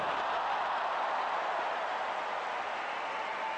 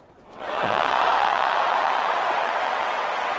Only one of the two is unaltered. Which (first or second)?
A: first